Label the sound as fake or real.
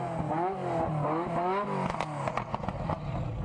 real